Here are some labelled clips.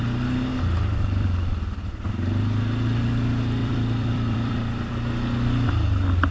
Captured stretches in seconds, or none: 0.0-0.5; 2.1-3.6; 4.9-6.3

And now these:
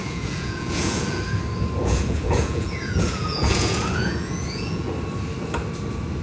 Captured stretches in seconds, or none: 1.2-1.8; 4.9-6.2